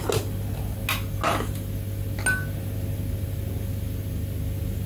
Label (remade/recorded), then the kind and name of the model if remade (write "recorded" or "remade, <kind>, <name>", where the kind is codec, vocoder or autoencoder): recorded